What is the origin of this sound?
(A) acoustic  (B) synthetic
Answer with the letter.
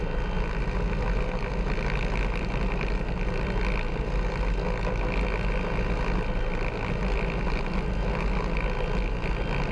A